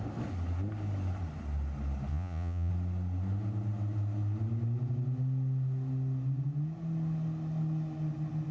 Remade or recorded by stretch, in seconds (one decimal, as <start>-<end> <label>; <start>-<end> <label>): 0.0-2.1 recorded; 2.1-2.7 remade; 2.7-8.5 recorded